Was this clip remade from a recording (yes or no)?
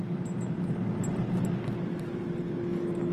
no